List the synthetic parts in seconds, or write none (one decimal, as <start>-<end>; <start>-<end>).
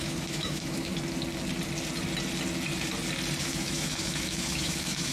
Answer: 0.0-0.9; 3.4-5.1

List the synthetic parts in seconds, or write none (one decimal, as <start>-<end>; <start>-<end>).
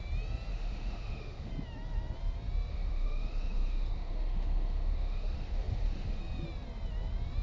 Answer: 0.5-1.5; 2.7-6.2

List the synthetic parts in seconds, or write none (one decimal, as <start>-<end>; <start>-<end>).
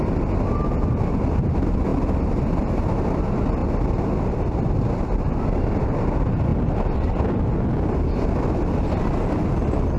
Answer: none